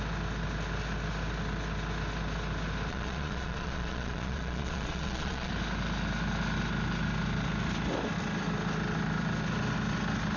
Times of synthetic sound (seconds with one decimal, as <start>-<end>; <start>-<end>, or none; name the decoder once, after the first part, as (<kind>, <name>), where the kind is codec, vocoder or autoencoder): 2.9-5.5 (vocoder, Vocos)